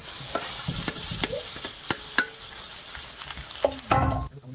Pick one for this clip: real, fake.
real